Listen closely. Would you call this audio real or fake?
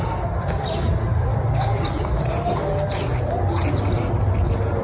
real